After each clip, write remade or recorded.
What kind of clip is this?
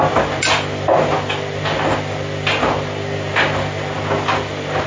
recorded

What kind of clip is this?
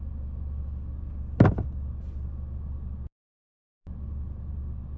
recorded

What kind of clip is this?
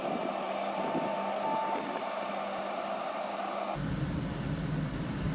recorded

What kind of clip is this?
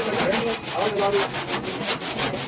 recorded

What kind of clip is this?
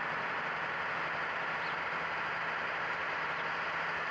recorded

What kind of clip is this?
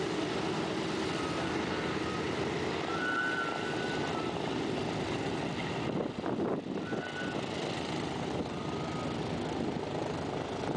recorded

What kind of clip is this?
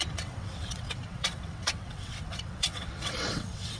remade